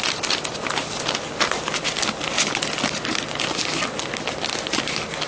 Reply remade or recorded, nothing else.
recorded